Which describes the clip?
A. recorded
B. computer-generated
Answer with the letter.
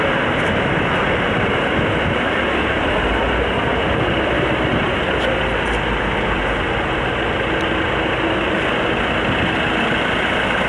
A